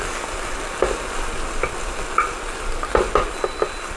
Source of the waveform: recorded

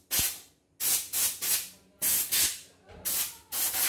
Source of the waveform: recorded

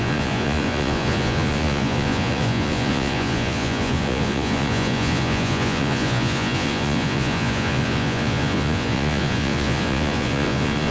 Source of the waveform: remade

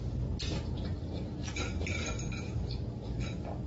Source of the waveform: recorded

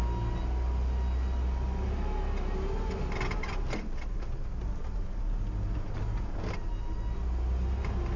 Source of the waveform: recorded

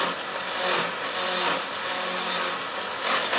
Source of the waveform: recorded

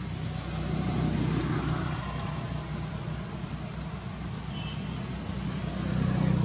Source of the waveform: recorded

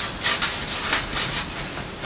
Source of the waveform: recorded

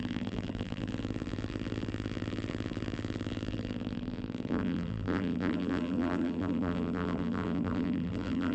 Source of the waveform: remade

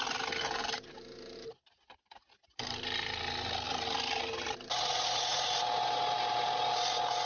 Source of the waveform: recorded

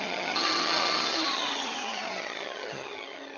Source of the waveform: remade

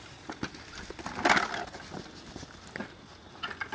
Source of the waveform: recorded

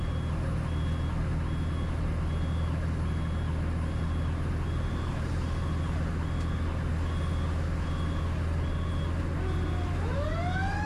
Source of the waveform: recorded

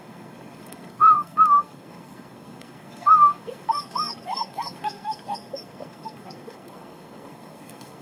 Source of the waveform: remade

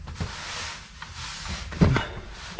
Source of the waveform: recorded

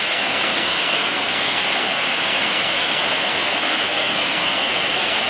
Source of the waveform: remade